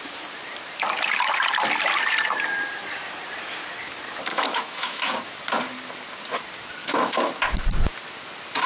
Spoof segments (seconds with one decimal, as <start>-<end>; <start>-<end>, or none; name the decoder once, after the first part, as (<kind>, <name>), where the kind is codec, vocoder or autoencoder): 4.3-5.1 (autoencoder, DAC-VAE); 6.8-7.3